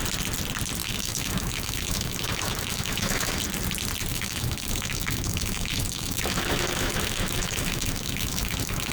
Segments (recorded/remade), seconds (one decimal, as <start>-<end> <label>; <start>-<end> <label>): 0.0-0.8 recorded; 0.8-3.4 remade; 3.4-4.1 recorded; 4.1-8.9 remade